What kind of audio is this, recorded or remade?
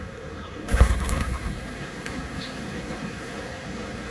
remade